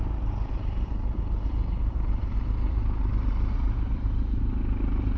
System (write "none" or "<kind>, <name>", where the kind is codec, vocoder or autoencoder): vocoder, BigVGAN v2